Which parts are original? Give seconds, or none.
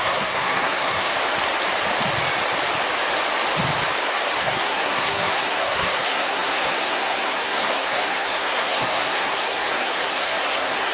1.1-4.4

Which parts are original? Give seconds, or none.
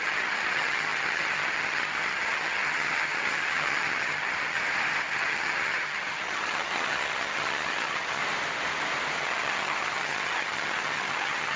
4.6-5.1; 8.2-9.2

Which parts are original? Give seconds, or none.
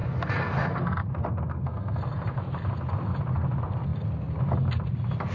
0.0-1.5; 2.0-5.3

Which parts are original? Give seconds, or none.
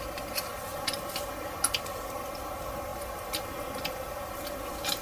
0.0-5.0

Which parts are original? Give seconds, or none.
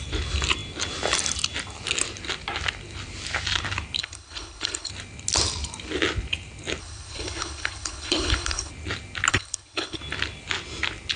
0.0-4.0; 4.9-6.8; 8.7-9.3; 10.0-11.2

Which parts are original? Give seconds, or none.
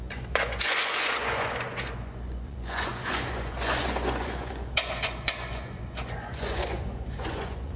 none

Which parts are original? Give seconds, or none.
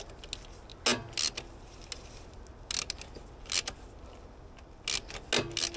0.0-5.8